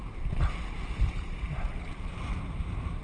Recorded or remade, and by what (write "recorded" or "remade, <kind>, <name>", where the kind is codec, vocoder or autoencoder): recorded